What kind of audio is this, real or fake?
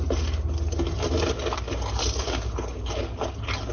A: real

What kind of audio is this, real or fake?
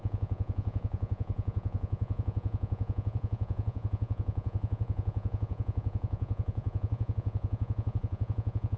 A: fake